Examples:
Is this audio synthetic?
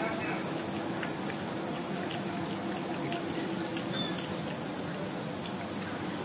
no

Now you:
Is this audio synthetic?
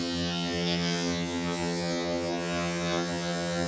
yes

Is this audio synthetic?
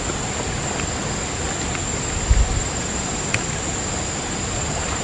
no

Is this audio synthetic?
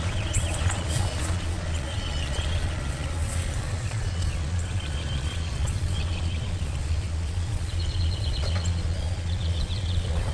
yes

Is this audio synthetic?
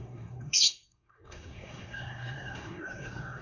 yes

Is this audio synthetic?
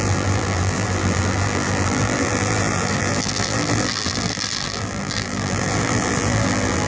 yes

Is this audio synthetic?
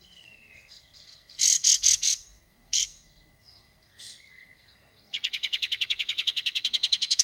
yes